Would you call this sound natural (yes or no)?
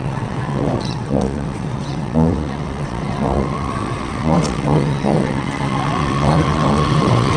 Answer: no